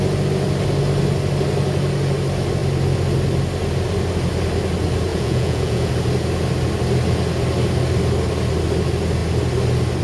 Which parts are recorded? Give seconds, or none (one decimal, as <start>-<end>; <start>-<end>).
0.0-5.1; 5.9-10.0